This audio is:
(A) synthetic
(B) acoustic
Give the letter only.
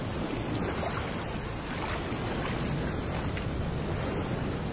B